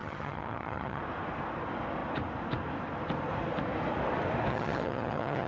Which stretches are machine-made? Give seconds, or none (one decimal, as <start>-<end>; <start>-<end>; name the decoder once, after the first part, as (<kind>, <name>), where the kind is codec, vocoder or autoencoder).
0.0-1.0 (vocoder, HiFi-GAN); 4.5-5.5